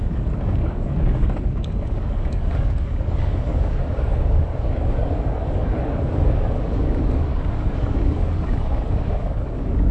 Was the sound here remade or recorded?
remade